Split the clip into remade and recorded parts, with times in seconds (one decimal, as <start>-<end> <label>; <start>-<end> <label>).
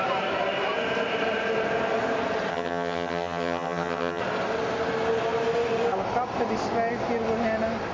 0.0-2.5 recorded; 2.5-4.2 remade; 4.2-7.9 recorded